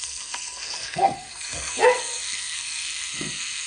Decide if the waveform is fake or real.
fake